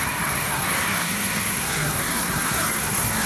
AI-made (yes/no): yes